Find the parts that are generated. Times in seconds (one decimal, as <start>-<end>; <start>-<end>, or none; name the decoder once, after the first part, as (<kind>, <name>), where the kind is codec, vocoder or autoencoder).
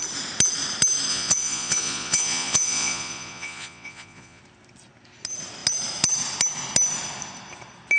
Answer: 1.1-4.4 (vocoder, Vocos)